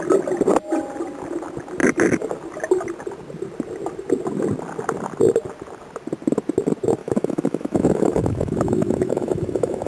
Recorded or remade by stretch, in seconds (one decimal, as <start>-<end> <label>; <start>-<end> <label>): 0.0-7.0 recorded; 7.0-9.9 remade